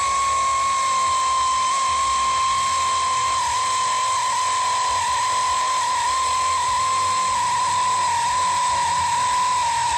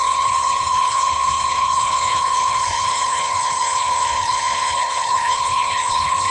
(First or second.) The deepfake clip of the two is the second